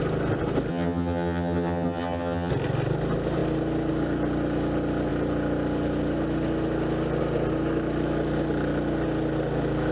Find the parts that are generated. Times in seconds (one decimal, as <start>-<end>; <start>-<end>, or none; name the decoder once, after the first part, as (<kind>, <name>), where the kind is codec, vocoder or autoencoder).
0.7-2.5 (vocoder, HiFi-GAN)